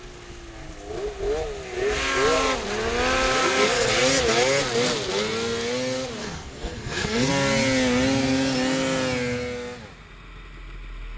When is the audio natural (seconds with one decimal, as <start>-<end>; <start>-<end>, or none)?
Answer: 0.0-3.4; 3.9-6.2; 7.3-11.2